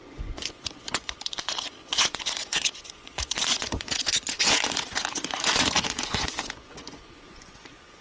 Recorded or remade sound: remade